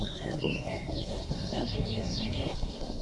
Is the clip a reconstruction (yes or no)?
yes